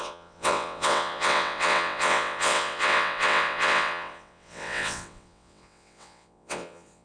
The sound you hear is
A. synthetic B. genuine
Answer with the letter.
A